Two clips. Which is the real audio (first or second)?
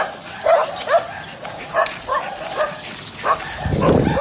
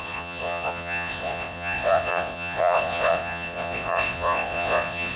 first